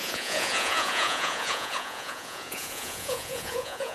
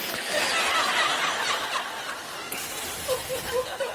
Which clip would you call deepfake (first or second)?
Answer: first